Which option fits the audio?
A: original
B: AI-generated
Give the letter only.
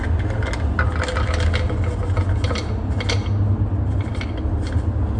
A